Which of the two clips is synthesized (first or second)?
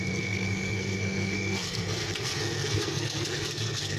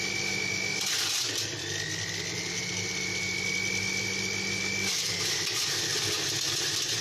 first